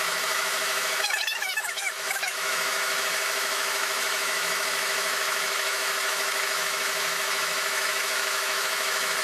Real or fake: fake